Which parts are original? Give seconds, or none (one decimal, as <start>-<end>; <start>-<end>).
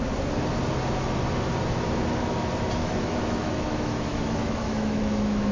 0.0-2.8